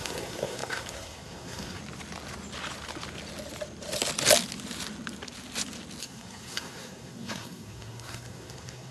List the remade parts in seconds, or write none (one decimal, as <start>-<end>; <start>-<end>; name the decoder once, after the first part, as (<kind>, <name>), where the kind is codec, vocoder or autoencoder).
0.0-1.8 (codec, SNAC); 6.0-8.9